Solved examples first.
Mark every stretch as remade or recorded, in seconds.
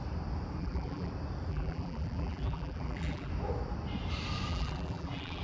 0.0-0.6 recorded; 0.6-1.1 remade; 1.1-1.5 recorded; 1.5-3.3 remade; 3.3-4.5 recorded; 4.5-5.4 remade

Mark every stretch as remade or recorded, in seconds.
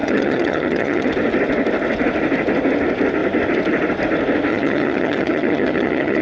0.0-1.1 remade; 1.1-4.5 recorded; 4.5-6.2 remade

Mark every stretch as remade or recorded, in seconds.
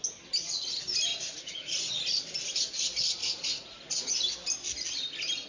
0.0-1.1 recorded; 1.1-1.9 remade; 1.9-3.2 recorded; 3.2-4.1 remade; 4.1-5.5 recorded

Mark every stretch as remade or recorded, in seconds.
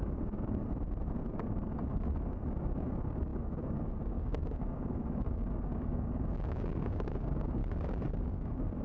0.0-0.6 remade; 0.6-1.3 recorded; 1.3-7.6 remade; 7.6-8.2 recorded; 8.2-8.8 remade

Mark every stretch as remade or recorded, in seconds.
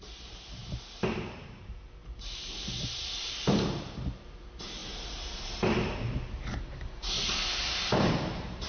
0.0-8.7 remade